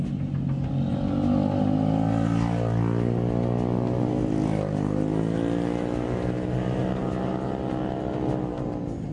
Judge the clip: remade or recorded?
recorded